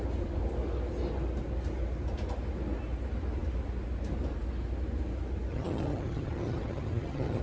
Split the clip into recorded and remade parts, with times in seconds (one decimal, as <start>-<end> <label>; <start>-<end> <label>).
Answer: 0.0-5.5 recorded; 5.5-7.4 remade